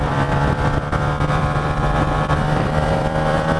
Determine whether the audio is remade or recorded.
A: remade